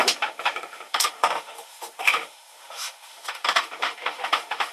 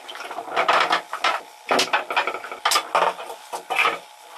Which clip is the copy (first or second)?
first